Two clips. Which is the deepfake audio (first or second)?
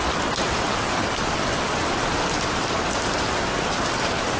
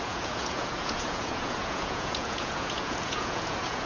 second